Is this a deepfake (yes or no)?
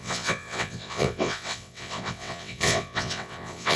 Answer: yes